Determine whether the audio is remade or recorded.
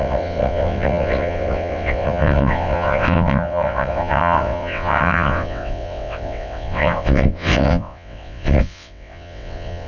remade